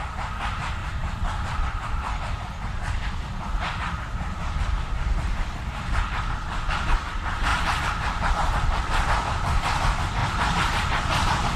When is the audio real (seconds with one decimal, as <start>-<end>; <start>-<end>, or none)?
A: 0.0-0.8; 1.8-7.5; 8.3-10.2

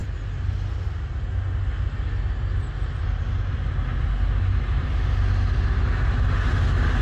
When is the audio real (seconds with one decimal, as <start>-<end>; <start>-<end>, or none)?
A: 0.0-7.0

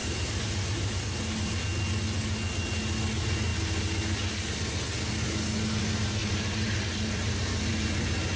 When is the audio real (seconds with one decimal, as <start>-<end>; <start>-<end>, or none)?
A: 1.0-6.2

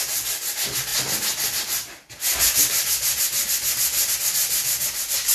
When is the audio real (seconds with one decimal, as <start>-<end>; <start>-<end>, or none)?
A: 0.0-5.3

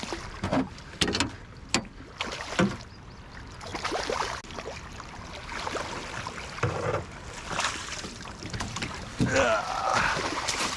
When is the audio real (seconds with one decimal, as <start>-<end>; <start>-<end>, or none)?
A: 0.0-3.7; 4.4-7.8; 9.1-9.9